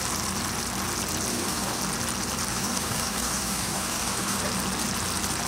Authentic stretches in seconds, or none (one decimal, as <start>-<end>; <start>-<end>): 0.0-1.3; 1.8-2.5; 4.4-5.5